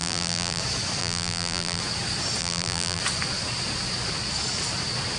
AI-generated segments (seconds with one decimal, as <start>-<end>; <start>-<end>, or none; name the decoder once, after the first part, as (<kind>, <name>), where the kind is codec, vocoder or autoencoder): 0.0-0.6 (vocoder, BigVGAN v2); 1.0-1.8; 2.4-3.0